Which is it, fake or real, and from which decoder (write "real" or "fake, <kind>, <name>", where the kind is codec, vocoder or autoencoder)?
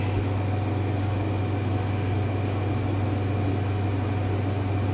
real